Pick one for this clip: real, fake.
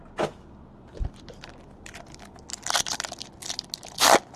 real